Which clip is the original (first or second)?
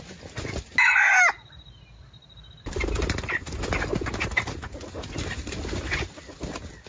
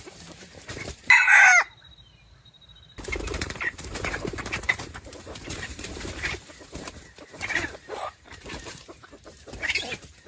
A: first